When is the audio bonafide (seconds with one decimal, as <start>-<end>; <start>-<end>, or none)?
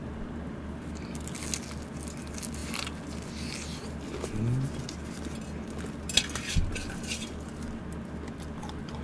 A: 0.0-9.0